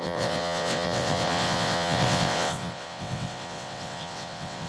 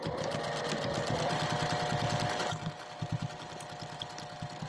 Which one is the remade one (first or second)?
first